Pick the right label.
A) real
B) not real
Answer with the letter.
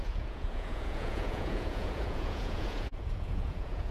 B